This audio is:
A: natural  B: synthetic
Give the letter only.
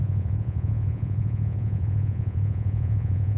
B